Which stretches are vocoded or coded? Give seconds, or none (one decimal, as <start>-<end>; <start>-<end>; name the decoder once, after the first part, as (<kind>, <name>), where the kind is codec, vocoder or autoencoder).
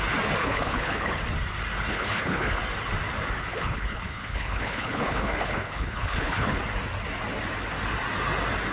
0.4-1.2 (codec, HILCodec); 1.9-2.6; 3.5-6.6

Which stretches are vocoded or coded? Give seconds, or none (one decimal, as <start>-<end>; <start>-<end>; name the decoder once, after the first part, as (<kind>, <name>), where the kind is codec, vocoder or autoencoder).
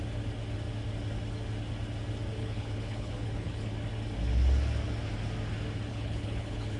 2.3-3.7 (codec, HILCodec); 5.9-6.8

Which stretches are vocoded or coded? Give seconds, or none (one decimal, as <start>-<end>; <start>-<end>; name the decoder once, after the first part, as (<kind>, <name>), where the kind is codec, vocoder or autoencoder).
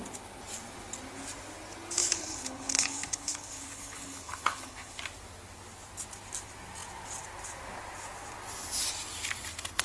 2.0-5.0 (codec, HILCodec)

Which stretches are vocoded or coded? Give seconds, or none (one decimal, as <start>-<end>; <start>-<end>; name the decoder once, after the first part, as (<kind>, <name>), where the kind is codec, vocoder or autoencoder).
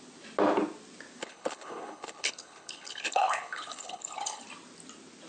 1.2-4.4 (codec, HILCodec)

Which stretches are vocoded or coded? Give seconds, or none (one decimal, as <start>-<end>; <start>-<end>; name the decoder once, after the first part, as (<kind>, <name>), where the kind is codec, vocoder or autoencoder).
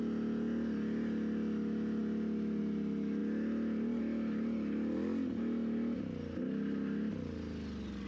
none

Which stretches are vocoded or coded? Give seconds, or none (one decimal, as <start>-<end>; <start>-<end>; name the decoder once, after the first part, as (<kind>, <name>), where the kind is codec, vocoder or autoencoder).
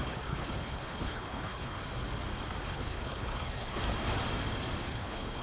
0.0-1.8 (codec, HILCodec); 2.6-3.8; 4.8-5.4